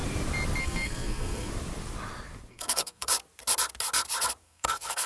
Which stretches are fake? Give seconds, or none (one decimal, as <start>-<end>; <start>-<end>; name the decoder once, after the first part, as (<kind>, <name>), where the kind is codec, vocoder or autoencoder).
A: 0.6-1.5 (codec, SNAC); 2.5-3.1; 4.4-5.1